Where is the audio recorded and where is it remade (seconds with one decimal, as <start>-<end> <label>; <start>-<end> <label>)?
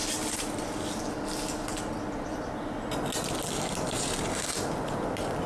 0.0-5.5 recorded